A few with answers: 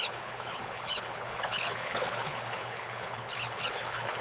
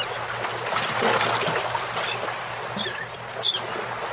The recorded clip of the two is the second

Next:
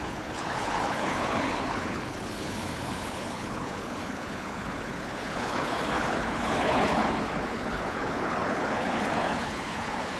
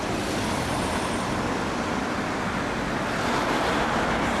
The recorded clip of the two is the second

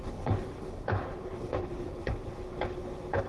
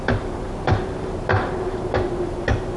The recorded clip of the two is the second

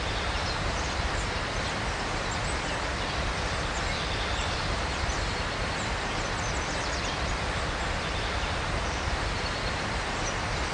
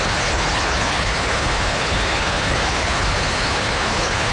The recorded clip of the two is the first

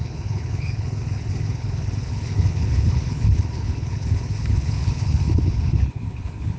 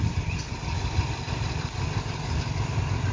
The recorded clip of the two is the second